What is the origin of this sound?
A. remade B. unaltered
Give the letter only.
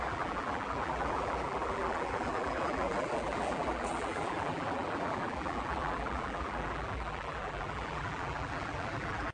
A